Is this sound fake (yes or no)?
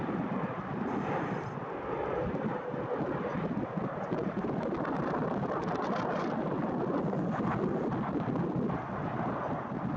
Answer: no